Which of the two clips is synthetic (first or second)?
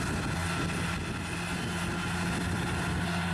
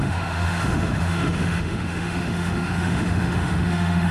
second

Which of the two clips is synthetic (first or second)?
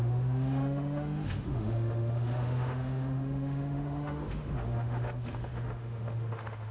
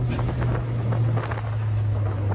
first